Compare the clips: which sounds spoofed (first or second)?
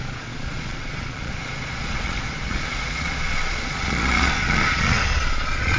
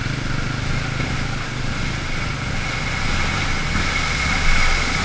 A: first